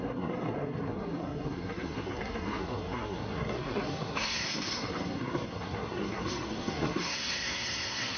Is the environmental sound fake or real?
fake